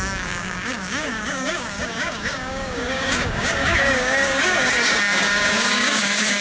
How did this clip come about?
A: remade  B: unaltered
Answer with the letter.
A